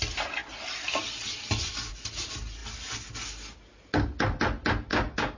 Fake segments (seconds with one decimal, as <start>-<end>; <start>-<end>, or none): 4.9-5.4